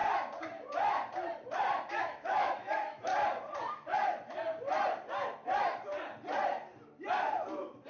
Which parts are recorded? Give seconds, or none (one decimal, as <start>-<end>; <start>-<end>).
0.0-1.9; 3.1-7.9